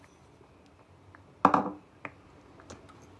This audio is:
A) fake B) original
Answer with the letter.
B